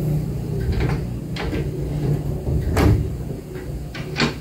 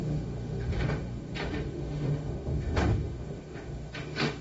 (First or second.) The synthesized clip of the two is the second